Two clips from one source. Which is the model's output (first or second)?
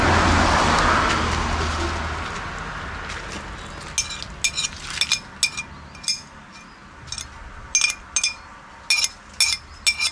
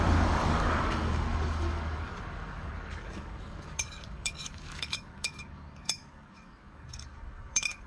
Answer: second